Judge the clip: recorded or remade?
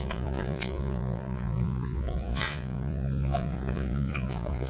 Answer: remade